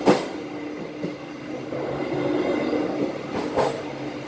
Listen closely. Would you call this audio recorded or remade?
recorded